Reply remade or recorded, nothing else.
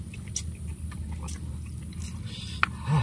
recorded